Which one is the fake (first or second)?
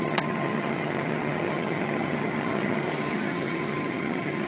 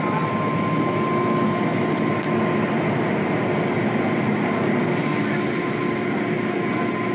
first